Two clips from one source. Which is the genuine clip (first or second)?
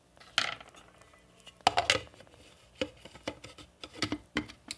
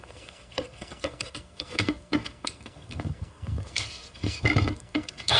first